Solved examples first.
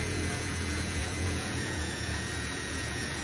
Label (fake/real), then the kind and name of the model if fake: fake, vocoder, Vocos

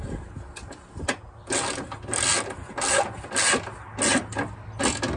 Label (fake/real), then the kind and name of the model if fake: real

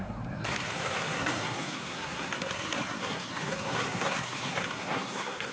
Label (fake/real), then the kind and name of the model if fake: fake, codec, SNAC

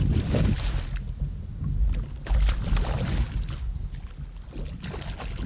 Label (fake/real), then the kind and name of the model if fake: real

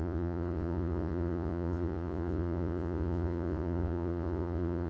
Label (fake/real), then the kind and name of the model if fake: fake, vocoder, Vocos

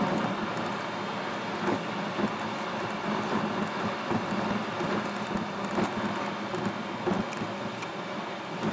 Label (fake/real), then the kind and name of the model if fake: real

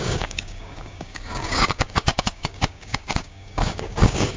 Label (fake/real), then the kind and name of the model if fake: fake, codec, DAC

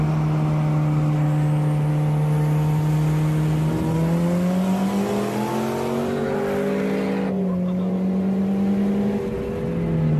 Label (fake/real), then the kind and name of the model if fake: real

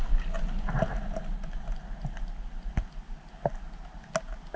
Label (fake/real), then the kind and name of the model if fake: real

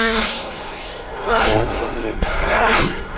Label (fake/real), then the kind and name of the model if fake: fake, codec, SNAC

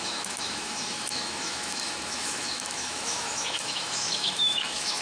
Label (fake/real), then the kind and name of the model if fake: fake, autoencoder, DAC-VAE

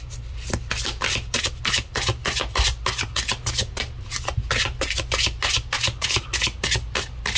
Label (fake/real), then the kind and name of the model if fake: real